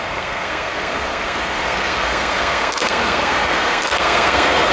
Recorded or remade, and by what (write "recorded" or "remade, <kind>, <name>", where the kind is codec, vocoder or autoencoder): remade, codec, SNAC